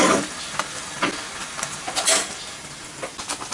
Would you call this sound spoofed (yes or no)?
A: no